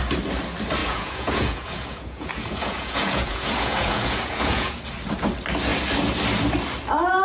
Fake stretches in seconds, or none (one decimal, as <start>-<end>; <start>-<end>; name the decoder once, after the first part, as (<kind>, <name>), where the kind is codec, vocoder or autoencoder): 0.8-4.8 (vocoder, Vocos)